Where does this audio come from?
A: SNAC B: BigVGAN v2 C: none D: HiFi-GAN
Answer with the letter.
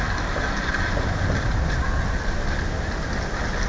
C